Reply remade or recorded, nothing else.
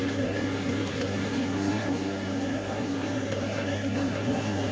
remade